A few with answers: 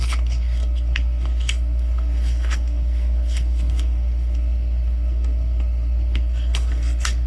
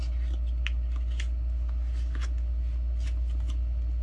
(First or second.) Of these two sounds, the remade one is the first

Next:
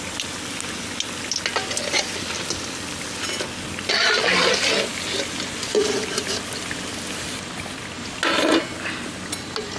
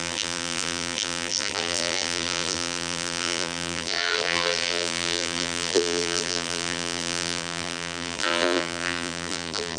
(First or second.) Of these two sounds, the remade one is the second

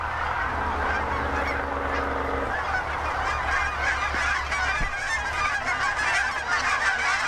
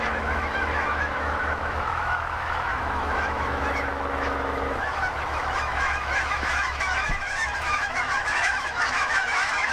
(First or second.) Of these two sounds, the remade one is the second